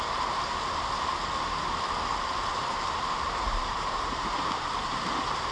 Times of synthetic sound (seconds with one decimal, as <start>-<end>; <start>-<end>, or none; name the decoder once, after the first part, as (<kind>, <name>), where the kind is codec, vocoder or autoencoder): 0.0-1.1 (vocoder, BigVGAN v2); 2.1-5.5